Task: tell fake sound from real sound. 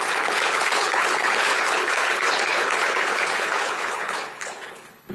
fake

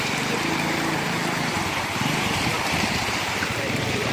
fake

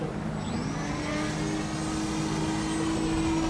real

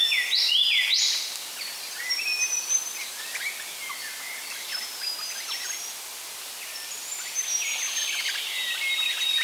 real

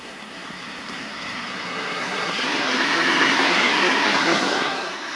fake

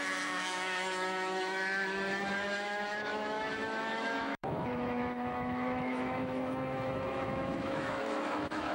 fake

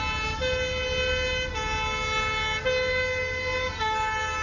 real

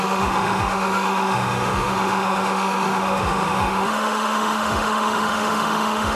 fake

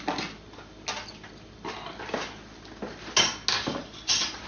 real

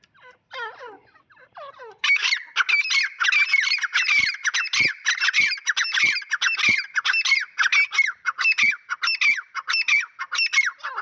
real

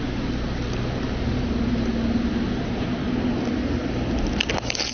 real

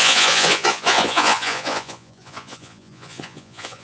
fake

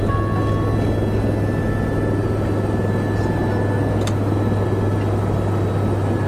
real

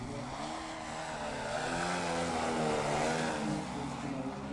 real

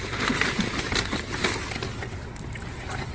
real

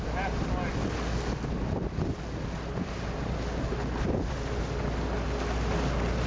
real